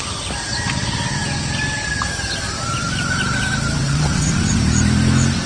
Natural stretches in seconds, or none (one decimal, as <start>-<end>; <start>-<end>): 0.0-3.8; 4.6-5.5